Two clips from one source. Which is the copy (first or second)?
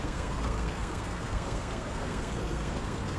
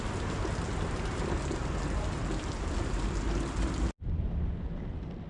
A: first